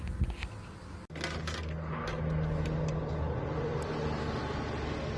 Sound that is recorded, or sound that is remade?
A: recorded